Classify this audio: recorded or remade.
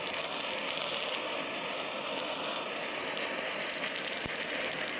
remade